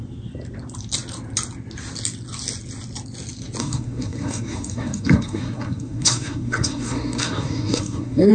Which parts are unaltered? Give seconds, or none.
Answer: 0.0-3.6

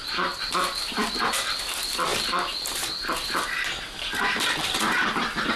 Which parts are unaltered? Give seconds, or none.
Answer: 0.0-5.6

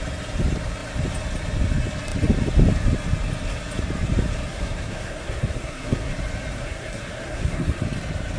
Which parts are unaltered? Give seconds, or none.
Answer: 0.0-4.5; 6.1-6.5; 7.8-8.4

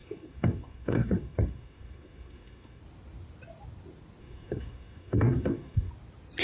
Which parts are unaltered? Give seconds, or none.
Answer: 2.8-4.2; 5.9-6.4